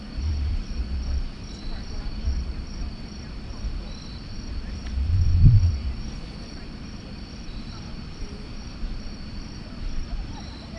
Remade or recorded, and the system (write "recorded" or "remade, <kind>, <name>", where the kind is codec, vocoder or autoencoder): remade, vocoder, BigVGAN v2